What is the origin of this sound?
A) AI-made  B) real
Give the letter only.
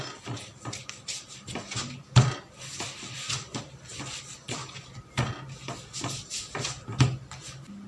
B